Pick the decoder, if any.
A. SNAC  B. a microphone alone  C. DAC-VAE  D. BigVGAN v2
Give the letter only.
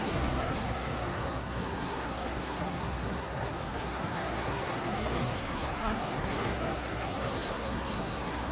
A